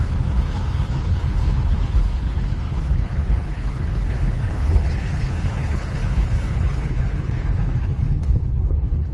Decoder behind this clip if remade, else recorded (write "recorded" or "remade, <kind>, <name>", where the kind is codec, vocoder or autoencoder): remade, codec, HILCodec